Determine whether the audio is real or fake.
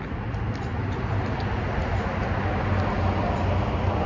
real